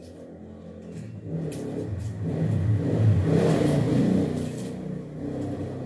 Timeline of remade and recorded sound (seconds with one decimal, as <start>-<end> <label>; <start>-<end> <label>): 0.0-5.9 recorded